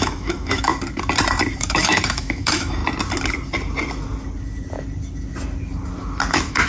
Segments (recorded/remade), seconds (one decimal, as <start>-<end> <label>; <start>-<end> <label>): 0.0-0.7 remade; 0.7-1.6 recorded; 1.6-2.8 remade; 2.8-6.3 recorded; 6.3-6.7 remade